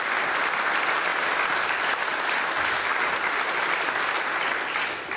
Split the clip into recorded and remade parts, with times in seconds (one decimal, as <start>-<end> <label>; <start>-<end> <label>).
0.0-5.2 recorded